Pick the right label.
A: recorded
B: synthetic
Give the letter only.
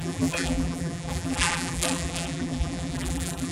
B